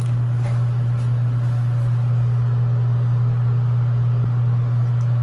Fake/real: real